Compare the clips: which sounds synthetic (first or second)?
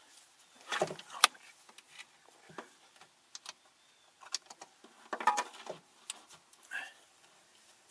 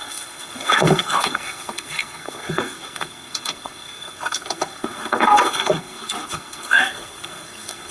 second